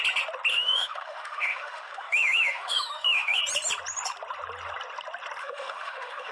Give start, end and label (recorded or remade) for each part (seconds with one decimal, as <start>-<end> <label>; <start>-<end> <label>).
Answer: 0.0-0.5 recorded; 0.5-3.4 remade; 3.4-5.4 recorded; 5.4-6.3 remade